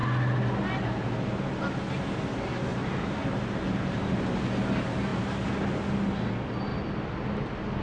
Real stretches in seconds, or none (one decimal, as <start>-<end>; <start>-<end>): 0.0-2.7; 4.2-5.1; 5.6-7.8

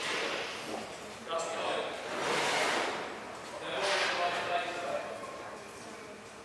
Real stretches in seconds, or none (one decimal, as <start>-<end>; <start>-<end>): 0.0-6.4

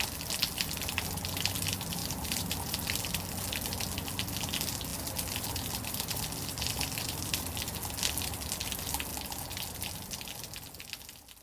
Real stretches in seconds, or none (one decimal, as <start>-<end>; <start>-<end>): 0.0-2.0; 3.0-4.9; 7.6-11.4